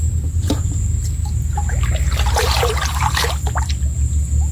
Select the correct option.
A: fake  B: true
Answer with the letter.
B